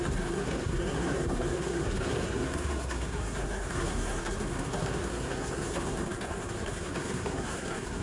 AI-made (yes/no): yes